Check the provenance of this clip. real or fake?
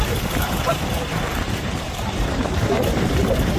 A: fake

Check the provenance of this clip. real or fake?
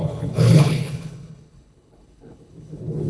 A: fake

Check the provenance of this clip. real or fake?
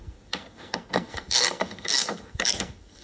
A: fake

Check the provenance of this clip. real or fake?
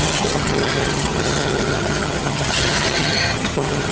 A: fake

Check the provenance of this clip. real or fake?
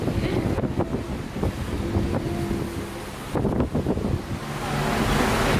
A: real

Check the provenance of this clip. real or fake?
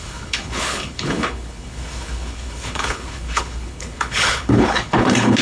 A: fake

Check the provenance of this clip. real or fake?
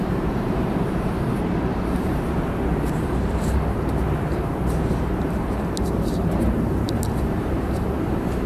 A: fake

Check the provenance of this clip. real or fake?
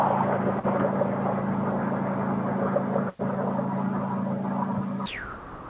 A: real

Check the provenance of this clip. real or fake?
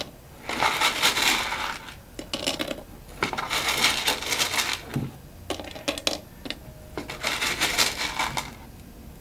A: real